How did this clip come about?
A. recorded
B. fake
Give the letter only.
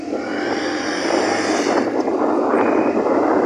A